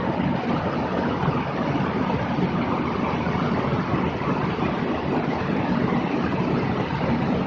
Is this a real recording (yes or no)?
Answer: yes